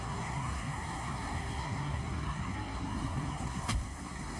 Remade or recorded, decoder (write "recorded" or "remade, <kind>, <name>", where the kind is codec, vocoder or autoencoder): remade, codec, SNAC